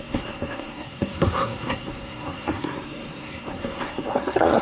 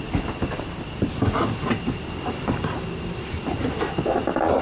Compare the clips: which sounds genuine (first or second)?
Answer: second